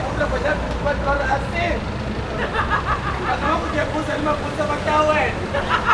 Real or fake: real